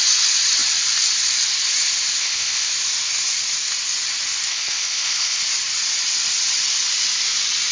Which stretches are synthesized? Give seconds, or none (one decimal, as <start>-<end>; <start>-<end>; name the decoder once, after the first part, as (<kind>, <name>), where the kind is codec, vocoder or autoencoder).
2.2-2.7 (codec, ZipCodec); 4.5-5.4